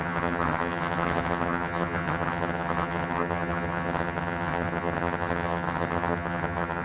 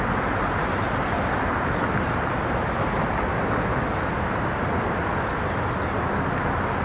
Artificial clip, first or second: first